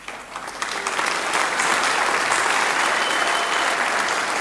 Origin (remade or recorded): recorded